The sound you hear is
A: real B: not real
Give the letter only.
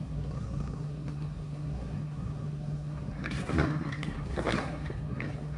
B